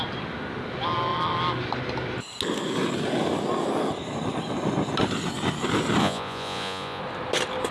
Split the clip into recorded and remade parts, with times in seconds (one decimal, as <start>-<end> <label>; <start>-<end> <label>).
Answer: 0.0-6.0 recorded; 6.0-7.0 remade; 7.0-7.7 recorded